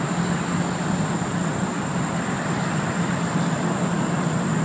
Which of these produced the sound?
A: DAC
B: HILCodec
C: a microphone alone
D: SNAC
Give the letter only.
C